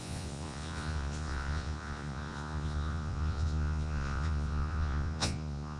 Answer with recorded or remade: remade